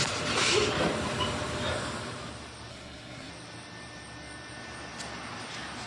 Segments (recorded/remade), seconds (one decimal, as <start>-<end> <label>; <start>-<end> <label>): 0.0-2.7 recorded; 2.7-3.3 remade; 3.3-5.9 recorded